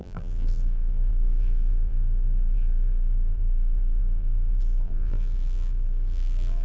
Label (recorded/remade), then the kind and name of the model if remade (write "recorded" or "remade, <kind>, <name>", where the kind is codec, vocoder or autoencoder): remade, vocoder, BigVGAN v2